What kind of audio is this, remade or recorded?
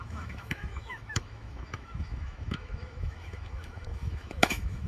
remade